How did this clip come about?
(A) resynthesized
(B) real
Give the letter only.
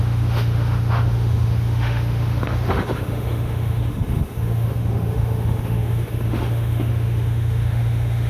A